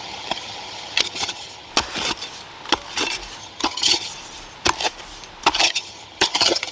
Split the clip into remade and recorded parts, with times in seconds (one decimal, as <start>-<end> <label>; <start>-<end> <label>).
0.0-1.7 remade; 1.7-3.4 recorded; 3.4-4.1 remade; 4.1-5.6 recorded; 5.6-6.7 remade